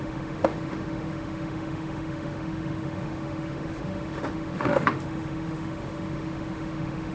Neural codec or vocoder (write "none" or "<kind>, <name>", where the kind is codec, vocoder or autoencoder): autoencoder, DAC-VAE